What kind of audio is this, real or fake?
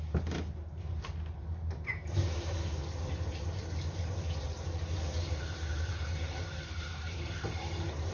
fake